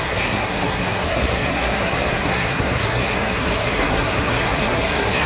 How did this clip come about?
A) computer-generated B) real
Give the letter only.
A